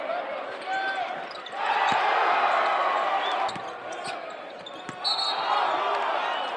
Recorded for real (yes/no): yes